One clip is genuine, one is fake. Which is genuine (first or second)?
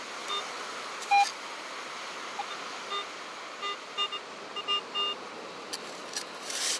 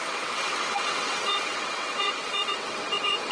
first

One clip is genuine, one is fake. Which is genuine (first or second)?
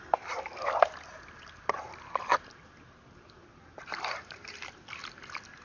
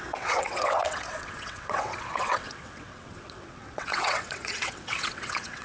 first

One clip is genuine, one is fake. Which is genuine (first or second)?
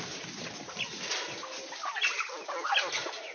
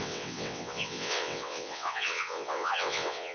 first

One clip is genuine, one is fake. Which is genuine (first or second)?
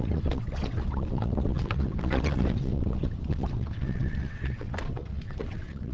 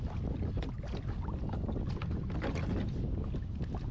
second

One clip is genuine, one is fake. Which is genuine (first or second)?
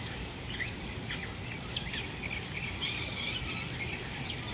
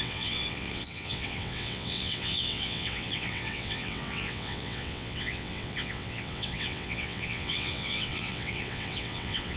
first